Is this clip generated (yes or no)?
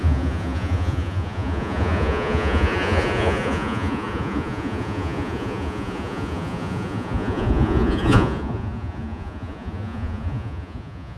yes